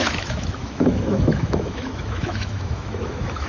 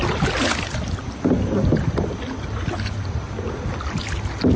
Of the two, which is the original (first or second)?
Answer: second